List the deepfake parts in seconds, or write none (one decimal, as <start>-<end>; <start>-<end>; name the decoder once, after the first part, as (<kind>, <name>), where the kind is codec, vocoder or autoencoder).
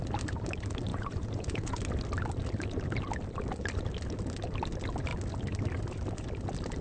0.9-1.8 (vocoder, Vocos)